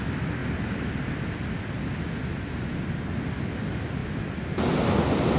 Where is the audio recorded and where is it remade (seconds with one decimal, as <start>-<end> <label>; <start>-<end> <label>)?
0.0-5.4 recorded